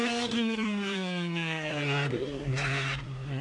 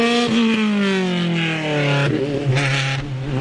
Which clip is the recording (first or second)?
second